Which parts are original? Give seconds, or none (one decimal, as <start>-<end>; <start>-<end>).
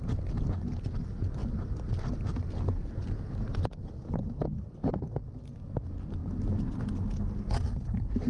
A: 0.0-8.3